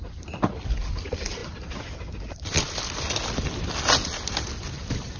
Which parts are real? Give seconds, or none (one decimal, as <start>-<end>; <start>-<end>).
0.0-5.2